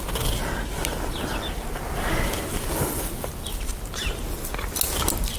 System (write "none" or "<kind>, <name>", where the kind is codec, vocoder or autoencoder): none